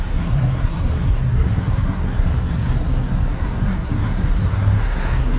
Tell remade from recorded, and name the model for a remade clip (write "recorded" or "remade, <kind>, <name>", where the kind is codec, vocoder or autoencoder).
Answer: remade, codec, SNAC